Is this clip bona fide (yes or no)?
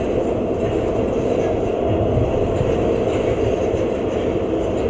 yes